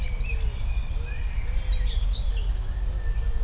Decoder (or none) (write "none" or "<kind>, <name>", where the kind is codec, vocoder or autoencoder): none